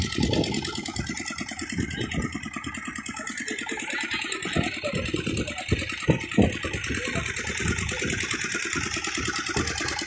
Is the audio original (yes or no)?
yes